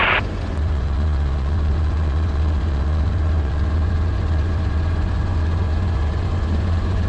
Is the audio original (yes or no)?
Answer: no